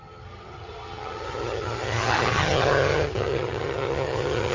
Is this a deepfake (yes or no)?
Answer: yes